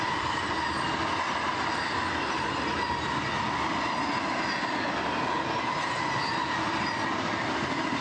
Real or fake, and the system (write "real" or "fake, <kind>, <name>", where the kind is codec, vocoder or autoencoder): real